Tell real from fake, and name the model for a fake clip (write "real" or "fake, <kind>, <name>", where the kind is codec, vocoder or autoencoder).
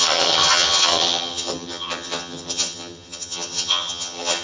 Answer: fake, vocoder, HiFi-GAN